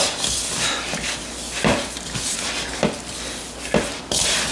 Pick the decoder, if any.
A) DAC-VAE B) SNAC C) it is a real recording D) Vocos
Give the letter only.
C